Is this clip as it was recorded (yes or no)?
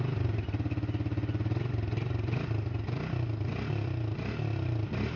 yes